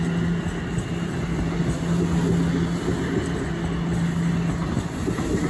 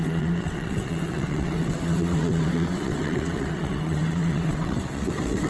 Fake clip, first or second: second